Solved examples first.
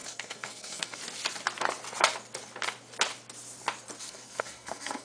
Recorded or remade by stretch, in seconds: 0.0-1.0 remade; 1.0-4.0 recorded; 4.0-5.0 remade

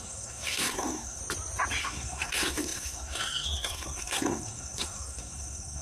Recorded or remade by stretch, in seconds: 0.0-1.2 remade; 1.2-1.8 recorded; 1.8-5.8 remade

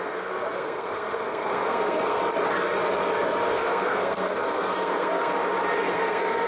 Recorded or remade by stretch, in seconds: 0.0-2.2 remade; 2.2-3.5 recorded; 3.5-5.3 remade; 5.3-5.9 recorded; 5.9-6.5 remade

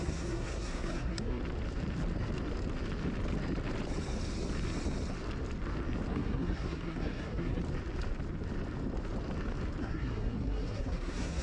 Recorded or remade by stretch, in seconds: 0.0-1.4 remade; 1.4-6.1 recorded; 6.1-7.6 remade; 7.6-9.8 recorded; 9.8-11.4 remade

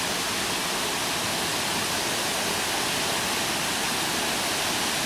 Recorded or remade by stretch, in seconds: 0.0-5.1 recorded

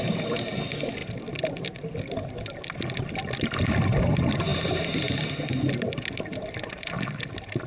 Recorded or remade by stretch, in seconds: 0.0-7.7 recorded

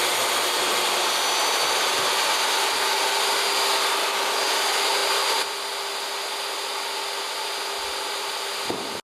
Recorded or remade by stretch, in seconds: 0.0-9.0 recorded

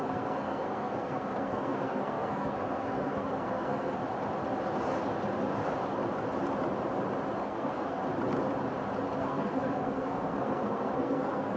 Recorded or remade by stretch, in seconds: 0.0-4.0 remade; 4.0-7.4 recorded; 7.4-8.0 remade; 8.0-9.2 recorded; 9.2-11.6 remade